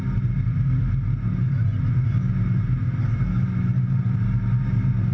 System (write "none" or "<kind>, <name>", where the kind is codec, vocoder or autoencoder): none